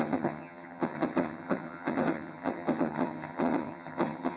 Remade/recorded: remade